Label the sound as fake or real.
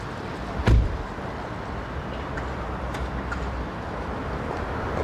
real